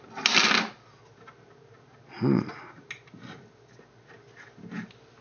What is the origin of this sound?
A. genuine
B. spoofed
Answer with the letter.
A